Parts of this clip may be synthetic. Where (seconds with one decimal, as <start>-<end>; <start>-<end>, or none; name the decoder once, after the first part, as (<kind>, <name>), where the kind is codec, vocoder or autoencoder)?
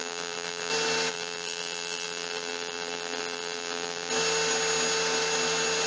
0.0-0.7 (vocoder, BigVGAN v2); 1.1-4.1